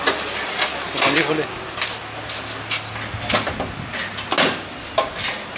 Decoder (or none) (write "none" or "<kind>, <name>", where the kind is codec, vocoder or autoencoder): none